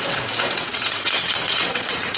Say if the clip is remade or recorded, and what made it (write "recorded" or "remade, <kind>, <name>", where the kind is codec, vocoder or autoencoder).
remade, vocoder, WaveNeXt